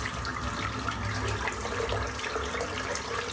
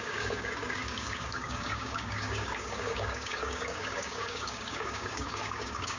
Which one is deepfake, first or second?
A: second